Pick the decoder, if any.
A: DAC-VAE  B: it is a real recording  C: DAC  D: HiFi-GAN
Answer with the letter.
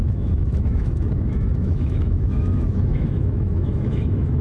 A